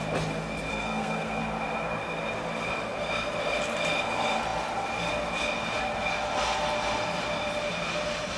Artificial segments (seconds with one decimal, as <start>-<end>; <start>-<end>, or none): 0.7-1.4